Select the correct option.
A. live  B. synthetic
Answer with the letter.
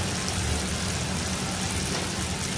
A